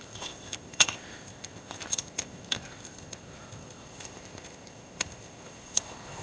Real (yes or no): no